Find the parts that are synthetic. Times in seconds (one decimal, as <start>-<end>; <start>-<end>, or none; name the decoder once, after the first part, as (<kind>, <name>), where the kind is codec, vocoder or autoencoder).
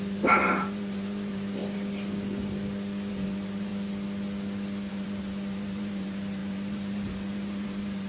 0.0-1.6 (vocoder, BigVGAN v2); 3.1-3.7; 4.9-8.1